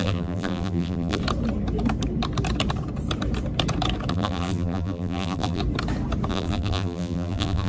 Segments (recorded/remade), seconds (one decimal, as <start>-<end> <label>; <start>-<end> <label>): 0.0-1.2 remade; 1.2-4.1 recorded; 4.1-5.6 remade; 5.6-6.3 recorded; 6.3-7.7 remade